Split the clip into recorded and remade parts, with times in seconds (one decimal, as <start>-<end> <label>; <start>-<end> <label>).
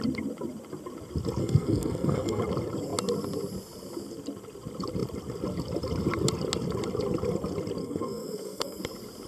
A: 0.0-1.4 recorded; 1.4-2.4 remade; 2.4-7.8 recorded; 7.8-8.8 remade; 8.8-9.3 recorded